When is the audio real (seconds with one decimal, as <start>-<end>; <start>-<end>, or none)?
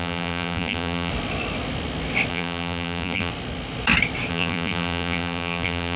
1.1-2.3; 3.3-4.3